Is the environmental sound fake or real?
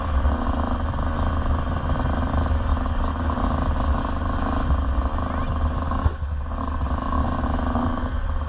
real